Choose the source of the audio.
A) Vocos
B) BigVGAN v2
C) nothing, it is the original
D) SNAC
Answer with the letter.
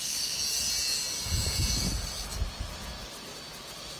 C